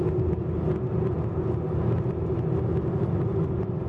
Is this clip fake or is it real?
real